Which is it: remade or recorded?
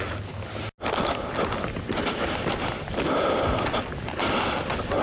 recorded